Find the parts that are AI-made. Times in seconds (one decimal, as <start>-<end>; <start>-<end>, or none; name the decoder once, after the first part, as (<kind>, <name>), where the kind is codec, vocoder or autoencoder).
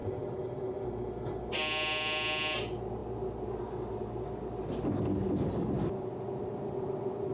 0.0-1.5 (autoencoder, DAC-VAE)